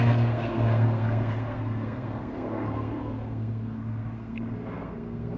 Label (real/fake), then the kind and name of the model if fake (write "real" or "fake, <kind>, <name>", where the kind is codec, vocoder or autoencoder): fake, codec, SNAC